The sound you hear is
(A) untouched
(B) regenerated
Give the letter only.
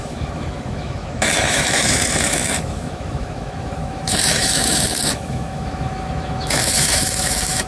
B